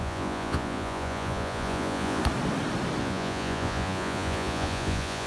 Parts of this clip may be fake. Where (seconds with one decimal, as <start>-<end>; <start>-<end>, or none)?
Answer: 0.0-2.2; 3.0-5.3